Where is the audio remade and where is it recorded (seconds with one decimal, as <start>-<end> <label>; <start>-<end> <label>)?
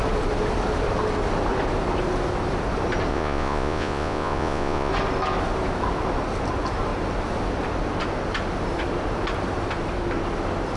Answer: 0.0-3.1 recorded; 3.1-4.9 remade; 4.9-10.8 recorded